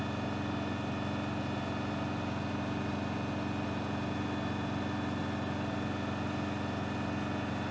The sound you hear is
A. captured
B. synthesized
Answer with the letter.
A